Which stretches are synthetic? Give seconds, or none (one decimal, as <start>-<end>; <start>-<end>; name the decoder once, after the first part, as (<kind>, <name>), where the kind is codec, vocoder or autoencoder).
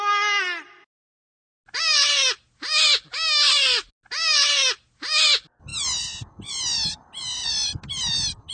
none